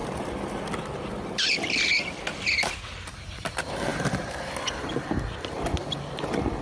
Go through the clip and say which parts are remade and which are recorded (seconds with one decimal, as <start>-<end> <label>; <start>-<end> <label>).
0.0-6.6 recorded